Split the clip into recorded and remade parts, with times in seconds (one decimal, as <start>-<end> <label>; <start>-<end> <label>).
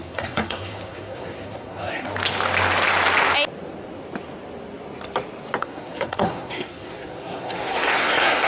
0.0-2.1 remade; 2.1-5.6 recorded; 5.6-8.5 remade